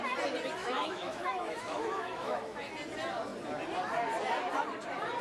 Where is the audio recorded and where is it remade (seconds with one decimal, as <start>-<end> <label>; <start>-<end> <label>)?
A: 0.0-0.6 recorded; 0.6-2.7 remade; 2.7-5.2 recorded